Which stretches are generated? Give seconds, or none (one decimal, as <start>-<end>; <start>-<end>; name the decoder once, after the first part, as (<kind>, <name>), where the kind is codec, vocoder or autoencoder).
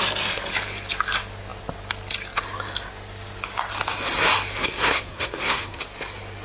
4.6-5.8 (codec, SNAC)